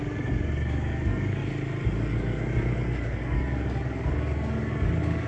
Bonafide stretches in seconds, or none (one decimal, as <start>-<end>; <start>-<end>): 1.4-1.9